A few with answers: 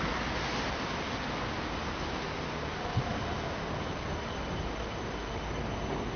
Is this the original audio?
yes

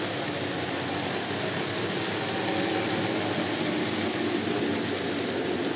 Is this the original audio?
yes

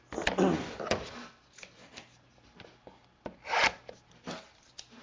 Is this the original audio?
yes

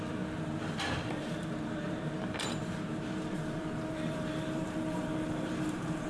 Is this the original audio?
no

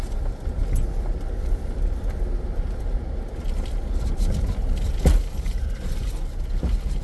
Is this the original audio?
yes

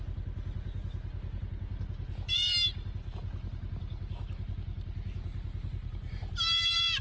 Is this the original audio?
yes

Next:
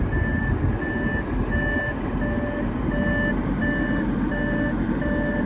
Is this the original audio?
yes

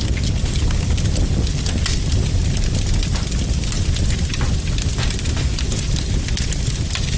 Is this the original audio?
yes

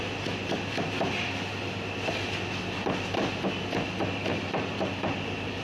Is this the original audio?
yes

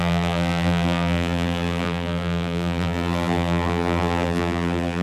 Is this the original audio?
no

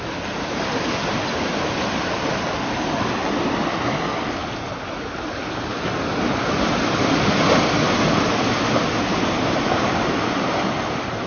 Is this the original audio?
yes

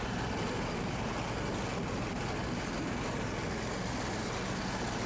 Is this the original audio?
yes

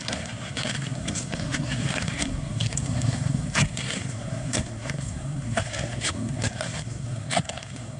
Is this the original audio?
no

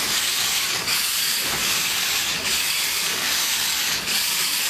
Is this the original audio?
no